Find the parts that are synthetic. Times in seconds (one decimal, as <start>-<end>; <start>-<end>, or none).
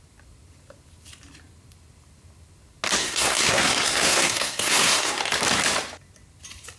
3.0-5.2